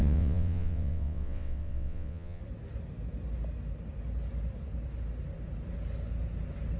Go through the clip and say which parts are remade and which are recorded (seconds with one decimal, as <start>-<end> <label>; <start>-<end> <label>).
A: 0.0-2.4 remade; 2.4-6.8 recorded